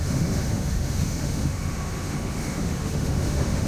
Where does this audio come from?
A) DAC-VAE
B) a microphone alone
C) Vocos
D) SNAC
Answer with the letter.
A